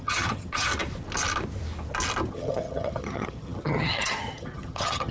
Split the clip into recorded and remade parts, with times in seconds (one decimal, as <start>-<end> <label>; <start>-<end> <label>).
0.0-0.7 remade; 0.7-2.3 recorded; 2.3-5.1 remade